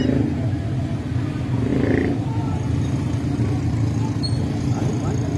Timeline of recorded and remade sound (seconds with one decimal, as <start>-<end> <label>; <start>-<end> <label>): 0.0-5.4 recorded